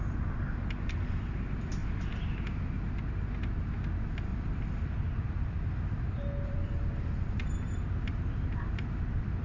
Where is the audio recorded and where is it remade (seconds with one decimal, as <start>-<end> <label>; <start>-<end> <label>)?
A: 0.0-4.3 recorded; 4.3-9.4 remade